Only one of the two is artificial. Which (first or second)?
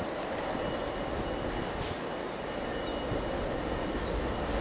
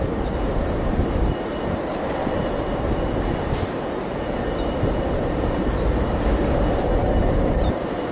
second